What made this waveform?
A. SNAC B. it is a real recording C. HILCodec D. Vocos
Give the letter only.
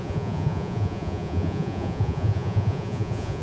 D